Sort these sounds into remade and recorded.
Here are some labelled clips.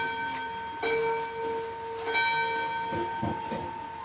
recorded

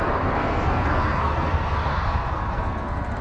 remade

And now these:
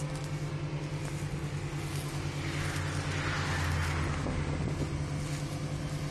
recorded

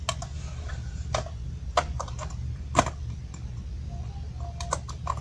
recorded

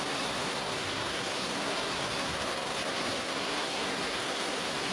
remade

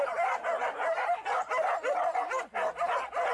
recorded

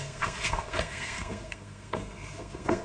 remade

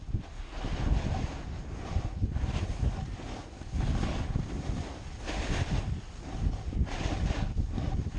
recorded